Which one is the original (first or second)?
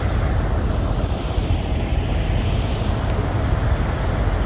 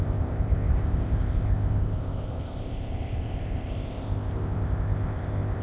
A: first